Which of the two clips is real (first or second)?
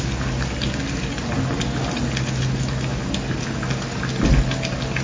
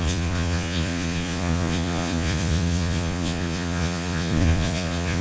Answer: first